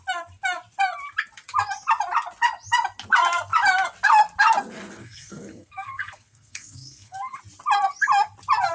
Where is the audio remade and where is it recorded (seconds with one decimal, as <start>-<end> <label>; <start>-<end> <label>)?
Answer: 0.0-5.0 recorded; 5.0-7.2 remade; 7.2-8.7 recorded